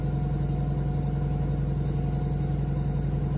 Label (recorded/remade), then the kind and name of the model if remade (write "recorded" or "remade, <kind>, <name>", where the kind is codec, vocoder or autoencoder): recorded